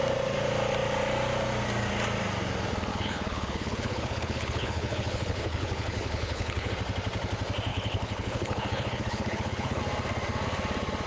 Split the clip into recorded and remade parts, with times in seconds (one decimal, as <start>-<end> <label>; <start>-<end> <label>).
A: 0.0-2.9 recorded; 2.9-6.7 remade; 6.7-7.7 recorded; 7.7-9.8 remade; 9.8-11.1 recorded